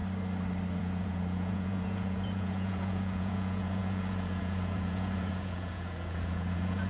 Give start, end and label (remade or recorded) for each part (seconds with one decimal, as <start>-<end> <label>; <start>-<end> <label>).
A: 0.0-0.8 recorded; 0.8-6.9 remade

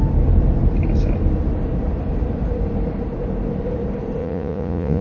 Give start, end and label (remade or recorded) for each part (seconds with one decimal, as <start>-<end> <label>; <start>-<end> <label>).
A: 0.0-4.2 recorded; 4.2-5.0 remade

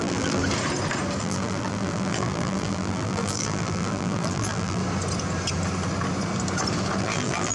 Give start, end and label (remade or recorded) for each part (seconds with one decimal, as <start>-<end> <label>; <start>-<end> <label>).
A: 0.0-0.4 remade; 0.4-1.2 recorded; 1.2-4.8 remade; 4.8-7.0 recorded; 7.0-7.5 remade

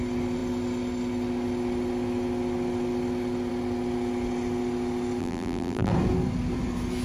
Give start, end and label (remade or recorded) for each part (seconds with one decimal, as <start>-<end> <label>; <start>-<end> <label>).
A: 0.0-5.2 recorded; 5.2-5.9 remade; 5.9-7.0 recorded

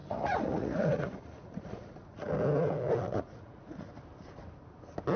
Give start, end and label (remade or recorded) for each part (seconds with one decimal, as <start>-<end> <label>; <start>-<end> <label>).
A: 0.0-2.3 remade; 2.3-3.1 recorded; 3.1-3.9 remade; 3.9-5.2 recorded

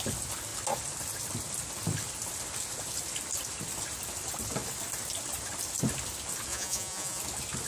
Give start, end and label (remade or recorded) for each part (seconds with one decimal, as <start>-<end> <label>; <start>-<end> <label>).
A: 0.0-6.5 recorded; 6.5-7.2 remade; 7.2-7.7 recorded

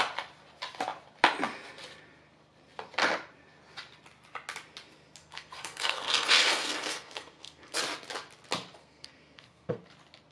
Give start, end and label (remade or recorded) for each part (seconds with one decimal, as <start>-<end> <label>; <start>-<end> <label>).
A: 0.0-5.2 recorded; 5.2-7.8 remade; 7.8-8.8 recorded; 8.8-9.8 remade; 9.8-10.3 recorded